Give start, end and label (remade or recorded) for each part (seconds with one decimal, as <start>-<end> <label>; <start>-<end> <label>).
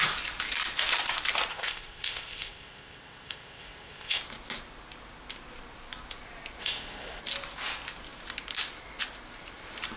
0.0-1.5 recorded; 1.5-4.2 remade; 4.2-6.6 recorded; 6.6-7.2 remade; 7.2-10.0 recorded